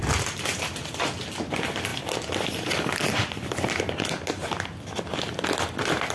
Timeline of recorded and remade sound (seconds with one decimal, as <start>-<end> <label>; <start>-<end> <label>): 0.0-6.1 recorded